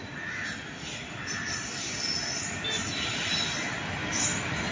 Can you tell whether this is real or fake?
real